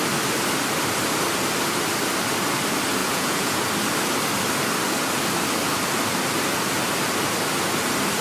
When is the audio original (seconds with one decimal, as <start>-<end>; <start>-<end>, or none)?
0.0-3.0; 3.6-8.2